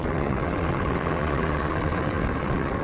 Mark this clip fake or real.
fake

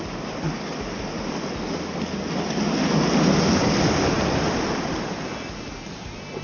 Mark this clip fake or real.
real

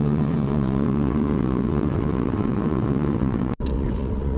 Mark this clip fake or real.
fake